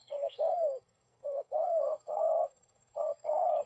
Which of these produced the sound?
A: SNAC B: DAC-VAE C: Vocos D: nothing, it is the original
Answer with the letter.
A